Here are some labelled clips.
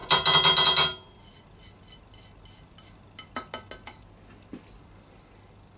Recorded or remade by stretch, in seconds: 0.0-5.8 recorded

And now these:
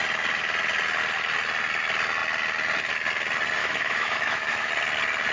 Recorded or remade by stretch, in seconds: 0.0-3.6 recorded; 3.6-4.7 remade; 4.7-5.3 recorded

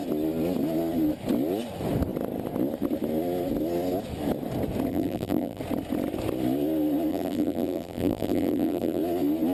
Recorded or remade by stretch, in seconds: 0.0-4.9 recorded; 4.9-5.6 remade; 5.6-7.1 recorded; 7.1-9.0 remade; 9.0-9.5 recorded

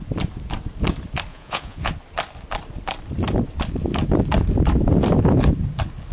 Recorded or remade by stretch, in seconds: 0.0-1.3 recorded; 1.3-1.9 remade; 1.9-6.1 recorded

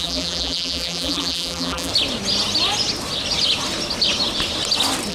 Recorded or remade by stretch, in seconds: 0.0-1.9 remade; 1.9-5.1 recorded